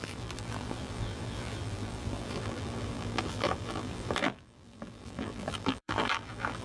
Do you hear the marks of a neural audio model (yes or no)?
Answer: yes